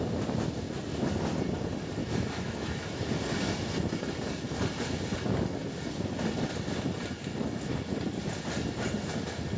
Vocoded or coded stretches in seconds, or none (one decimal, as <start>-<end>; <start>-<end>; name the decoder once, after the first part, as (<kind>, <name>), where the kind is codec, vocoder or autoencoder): 2.0-3.0 (autoencoder, DAC-VAE)